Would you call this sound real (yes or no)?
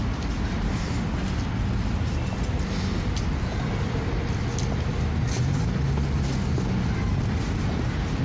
yes